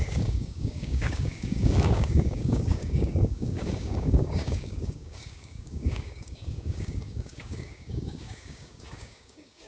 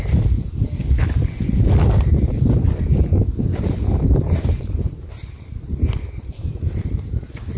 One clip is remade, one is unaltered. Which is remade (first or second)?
first